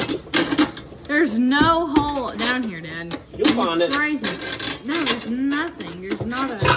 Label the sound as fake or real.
real